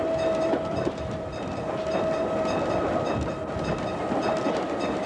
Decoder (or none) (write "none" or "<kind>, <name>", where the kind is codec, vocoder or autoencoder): none